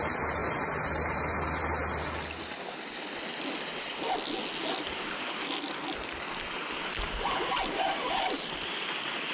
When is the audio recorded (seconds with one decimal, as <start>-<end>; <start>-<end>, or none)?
0.0-9.3